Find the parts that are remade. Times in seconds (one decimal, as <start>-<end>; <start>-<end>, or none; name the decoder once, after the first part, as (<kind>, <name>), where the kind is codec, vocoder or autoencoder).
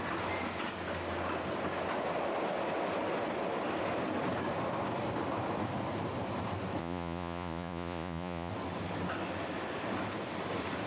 6.8-8.5 (vocoder, Vocos)